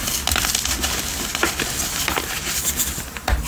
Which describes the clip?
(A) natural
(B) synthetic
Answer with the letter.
B